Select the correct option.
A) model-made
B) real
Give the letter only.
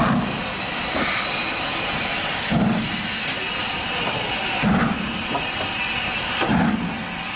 B